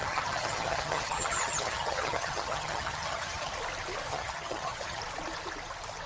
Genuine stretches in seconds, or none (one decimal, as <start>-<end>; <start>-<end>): 3.5-4.1; 5.0-6.1